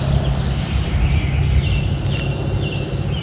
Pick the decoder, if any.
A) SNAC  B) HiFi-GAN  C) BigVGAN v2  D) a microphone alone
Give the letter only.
D